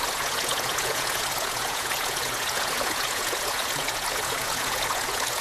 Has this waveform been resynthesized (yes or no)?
yes